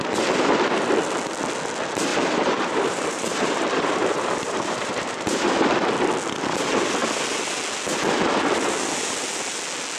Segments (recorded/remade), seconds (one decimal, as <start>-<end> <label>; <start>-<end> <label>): 0.0-2.1 recorded; 2.1-5.5 remade; 5.5-10.0 recorded